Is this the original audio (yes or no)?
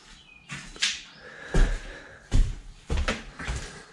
yes